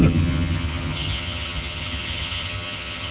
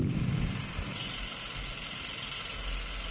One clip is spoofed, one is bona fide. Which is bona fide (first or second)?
second